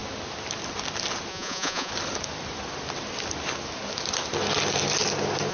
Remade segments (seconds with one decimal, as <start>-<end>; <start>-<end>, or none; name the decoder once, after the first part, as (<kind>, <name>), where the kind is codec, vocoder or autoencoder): 1.3-1.9 (vocoder, Vocos)